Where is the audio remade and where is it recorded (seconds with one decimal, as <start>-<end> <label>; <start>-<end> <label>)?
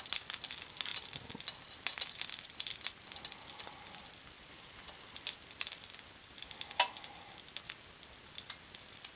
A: 0.0-9.2 recorded